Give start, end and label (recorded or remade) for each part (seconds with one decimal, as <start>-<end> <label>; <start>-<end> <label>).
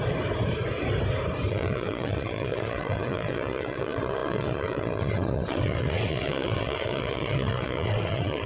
0.0-1.5 recorded; 1.5-8.5 remade